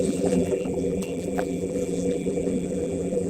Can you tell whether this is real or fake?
fake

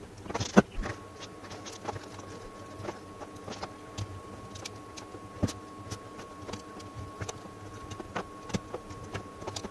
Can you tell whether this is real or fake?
real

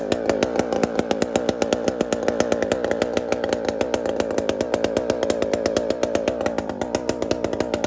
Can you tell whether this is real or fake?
real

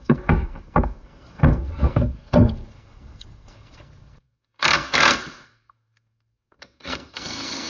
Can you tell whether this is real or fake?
fake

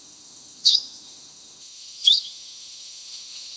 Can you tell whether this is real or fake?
fake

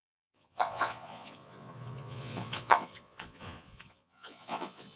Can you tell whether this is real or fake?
fake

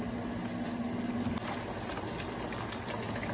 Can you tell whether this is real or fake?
real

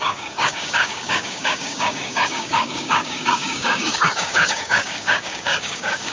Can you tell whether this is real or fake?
fake